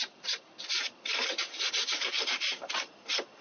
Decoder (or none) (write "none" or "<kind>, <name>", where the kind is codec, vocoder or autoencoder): none